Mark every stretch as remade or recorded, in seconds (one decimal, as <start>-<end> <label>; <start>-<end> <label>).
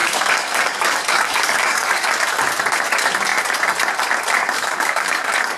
0.0-2.1 remade; 2.1-4.4 recorded; 4.4-5.6 remade